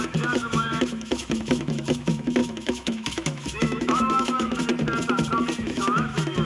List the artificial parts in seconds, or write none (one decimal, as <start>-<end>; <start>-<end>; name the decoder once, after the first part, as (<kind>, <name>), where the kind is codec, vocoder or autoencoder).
0.0-4.7 (autoencoder, DAC-VAE); 5.6-6.4

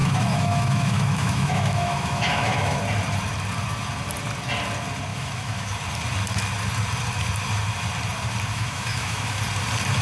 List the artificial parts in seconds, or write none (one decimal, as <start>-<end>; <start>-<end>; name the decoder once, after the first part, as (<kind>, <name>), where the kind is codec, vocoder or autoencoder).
0.0-2.8 (autoencoder, DAC-VAE); 5.1-5.8; 8.5-9.4

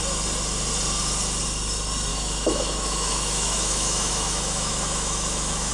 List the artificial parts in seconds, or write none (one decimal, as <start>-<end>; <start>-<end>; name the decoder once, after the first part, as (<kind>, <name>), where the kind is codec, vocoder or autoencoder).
2.1-5.7 (autoencoder, DAC-VAE)

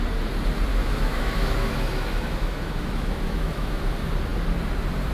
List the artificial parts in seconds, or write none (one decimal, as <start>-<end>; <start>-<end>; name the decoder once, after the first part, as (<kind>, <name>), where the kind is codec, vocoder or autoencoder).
0.7-3.8 (autoencoder, DAC-VAE)

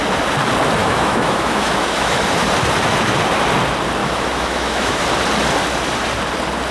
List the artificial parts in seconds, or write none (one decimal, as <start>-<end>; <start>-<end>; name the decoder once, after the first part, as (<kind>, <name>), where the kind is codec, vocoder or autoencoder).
0.8-2.2 (autoencoder, DAC-VAE); 4.0-5.0

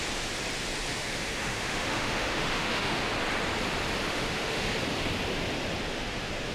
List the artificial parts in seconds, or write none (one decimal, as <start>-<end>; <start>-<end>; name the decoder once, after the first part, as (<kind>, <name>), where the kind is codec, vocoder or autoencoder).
0.9-3.1 (autoencoder, DAC-VAE); 4.1-4.7; 5.9-6.5

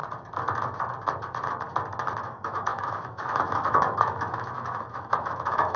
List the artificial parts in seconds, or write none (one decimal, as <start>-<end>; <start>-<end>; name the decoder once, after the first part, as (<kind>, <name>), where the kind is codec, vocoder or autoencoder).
2.2-5.8 (autoencoder, DAC-VAE)